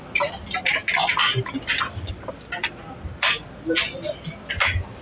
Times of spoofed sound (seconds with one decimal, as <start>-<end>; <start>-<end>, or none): none